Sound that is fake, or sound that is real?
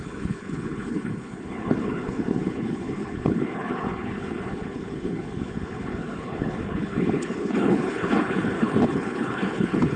fake